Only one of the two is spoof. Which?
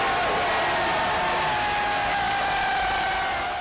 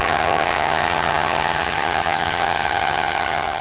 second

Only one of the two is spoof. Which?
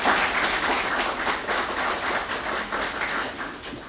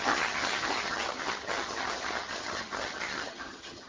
second